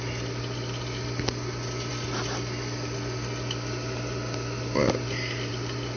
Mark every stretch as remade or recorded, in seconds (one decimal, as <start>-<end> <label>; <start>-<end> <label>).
0.0-6.0 recorded